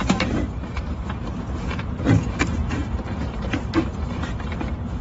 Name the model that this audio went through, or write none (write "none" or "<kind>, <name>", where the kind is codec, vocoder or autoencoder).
vocoder, BigVGAN v2